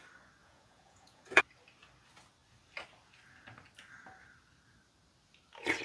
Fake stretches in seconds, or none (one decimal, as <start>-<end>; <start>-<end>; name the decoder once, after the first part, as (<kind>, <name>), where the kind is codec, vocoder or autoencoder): 0.4-1.4 (vocoder, Vocos)

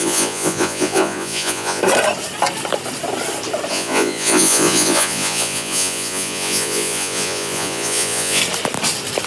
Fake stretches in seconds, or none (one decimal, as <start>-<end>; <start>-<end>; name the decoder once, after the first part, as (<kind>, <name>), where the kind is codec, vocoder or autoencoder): 0.0-1.8 (vocoder, Vocos); 3.7-8.4